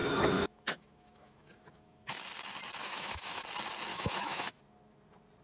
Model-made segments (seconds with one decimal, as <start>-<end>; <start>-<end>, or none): 0.0-2.2; 2.8-3.4; 3.9-4.6